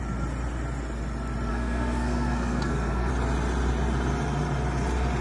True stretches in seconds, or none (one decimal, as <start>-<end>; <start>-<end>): 0.0-1.5; 3.1-5.2